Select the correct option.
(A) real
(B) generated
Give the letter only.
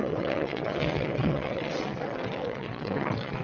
B